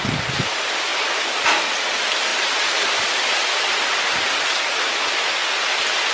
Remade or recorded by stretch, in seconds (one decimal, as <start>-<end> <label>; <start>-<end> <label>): 0.0-6.1 recorded